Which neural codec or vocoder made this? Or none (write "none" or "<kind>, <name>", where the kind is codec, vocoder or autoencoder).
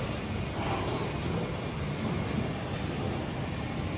none